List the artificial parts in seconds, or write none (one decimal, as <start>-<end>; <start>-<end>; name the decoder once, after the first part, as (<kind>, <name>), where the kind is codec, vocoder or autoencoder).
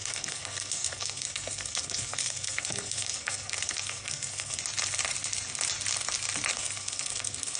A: 0.0-4.6 (codec, SNAC); 6.5-7.6